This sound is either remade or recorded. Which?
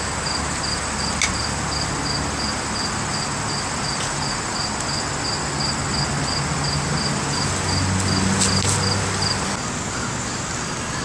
recorded